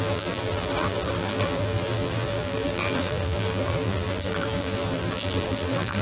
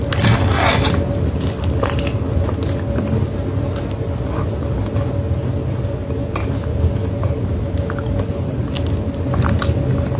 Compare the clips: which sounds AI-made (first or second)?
first